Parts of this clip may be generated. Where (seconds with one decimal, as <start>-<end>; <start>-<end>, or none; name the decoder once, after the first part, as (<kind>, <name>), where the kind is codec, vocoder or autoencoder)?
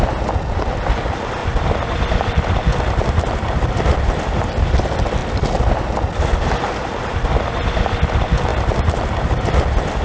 1.4-2.8 (vocoder, BigVGAN v2)